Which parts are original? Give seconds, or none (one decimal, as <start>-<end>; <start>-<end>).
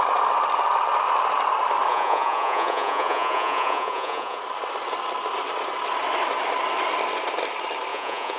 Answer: 0.0-1.9; 4.4-7.9